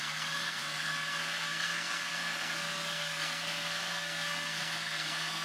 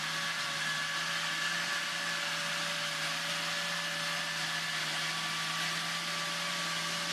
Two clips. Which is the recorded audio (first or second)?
second